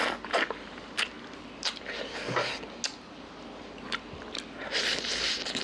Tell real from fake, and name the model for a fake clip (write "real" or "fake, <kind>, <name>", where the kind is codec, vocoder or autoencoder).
real